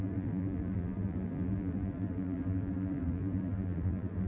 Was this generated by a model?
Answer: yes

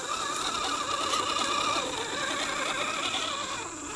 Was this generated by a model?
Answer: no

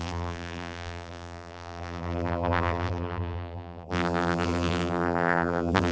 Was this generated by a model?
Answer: yes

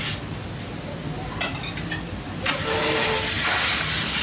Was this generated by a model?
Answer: no